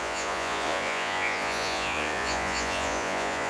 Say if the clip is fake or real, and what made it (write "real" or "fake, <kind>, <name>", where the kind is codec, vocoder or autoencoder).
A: fake, vocoder, Vocos